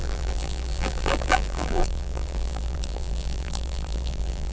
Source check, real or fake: fake